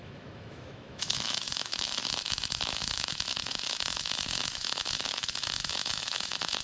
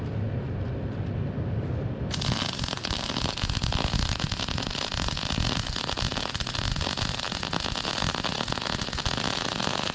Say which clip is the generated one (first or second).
first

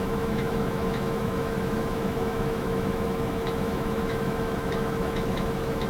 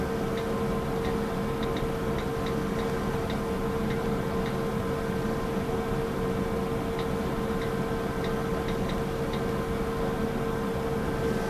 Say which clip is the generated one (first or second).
first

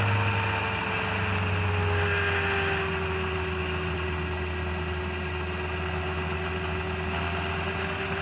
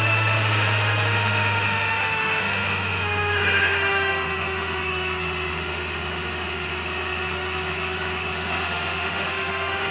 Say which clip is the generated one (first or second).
second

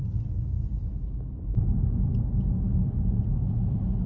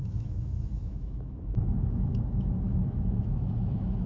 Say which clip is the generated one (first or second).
second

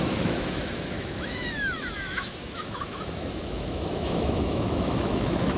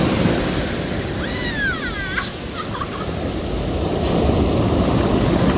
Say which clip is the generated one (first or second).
first